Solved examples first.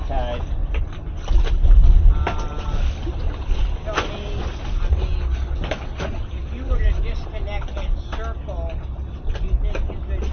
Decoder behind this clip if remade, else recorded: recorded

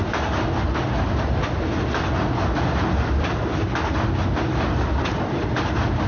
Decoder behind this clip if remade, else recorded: recorded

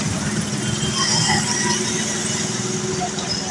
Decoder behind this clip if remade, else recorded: recorded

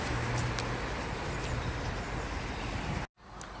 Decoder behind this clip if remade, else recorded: recorded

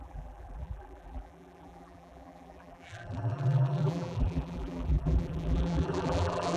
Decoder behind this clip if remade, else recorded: remade, vocoder, BigVGAN v2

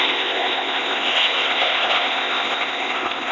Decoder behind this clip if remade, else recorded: remade, codec, ZipCodec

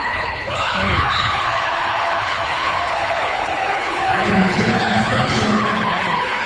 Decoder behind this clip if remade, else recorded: remade, codec, HILCodec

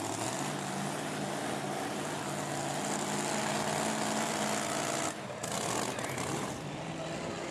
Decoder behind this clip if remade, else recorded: recorded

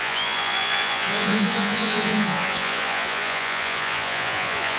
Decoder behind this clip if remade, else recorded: remade, vocoder, Vocos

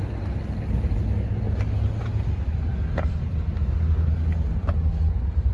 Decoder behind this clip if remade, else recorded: recorded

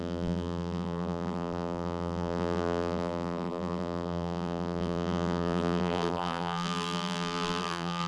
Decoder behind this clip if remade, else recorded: remade, vocoder, BigVGAN v2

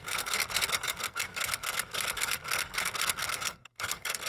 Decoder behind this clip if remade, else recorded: remade, codec, SNAC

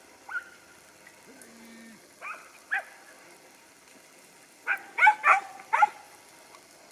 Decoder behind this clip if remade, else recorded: recorded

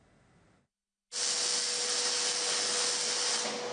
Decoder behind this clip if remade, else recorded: recorded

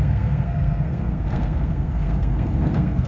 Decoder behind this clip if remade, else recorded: remade, codec, SNAC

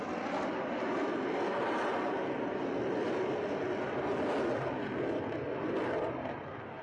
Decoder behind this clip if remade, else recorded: recorded